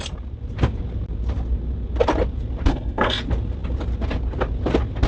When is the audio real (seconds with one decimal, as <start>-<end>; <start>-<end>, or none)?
0.0-2.7; 3.2-5.1